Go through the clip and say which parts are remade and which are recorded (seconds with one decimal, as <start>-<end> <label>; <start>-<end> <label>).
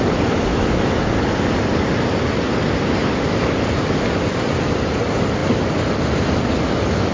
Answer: 0.0-0.5 recorded; 0.5-1.0 remade; 1.0-7.1 recorded